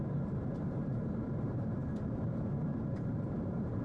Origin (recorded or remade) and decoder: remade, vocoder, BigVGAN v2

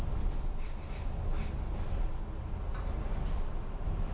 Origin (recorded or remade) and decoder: recorded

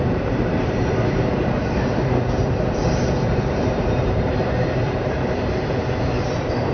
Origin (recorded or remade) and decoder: remade, vocoder, BigVGAN v2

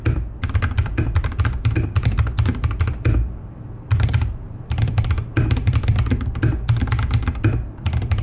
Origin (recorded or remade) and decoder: remade, vocoder, BigVGAN v2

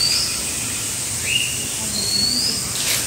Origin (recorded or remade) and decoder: recorded